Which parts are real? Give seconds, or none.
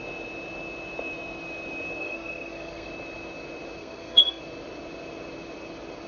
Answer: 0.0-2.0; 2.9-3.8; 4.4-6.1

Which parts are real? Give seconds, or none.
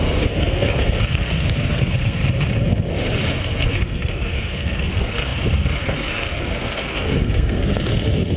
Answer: 2.2-3.3